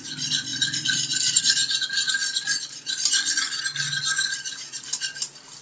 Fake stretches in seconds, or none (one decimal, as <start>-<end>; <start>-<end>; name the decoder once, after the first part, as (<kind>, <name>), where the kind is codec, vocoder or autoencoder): none